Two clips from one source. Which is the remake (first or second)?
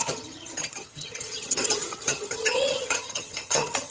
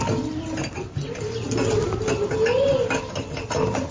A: first